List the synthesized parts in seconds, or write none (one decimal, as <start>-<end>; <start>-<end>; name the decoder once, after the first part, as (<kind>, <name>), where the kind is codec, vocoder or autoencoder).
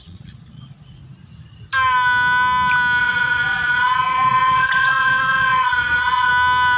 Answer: 0.0-1.0 (vocoder, Vocos); 3.0-6.3